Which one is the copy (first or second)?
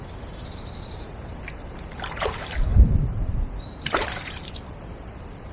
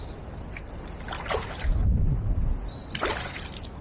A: first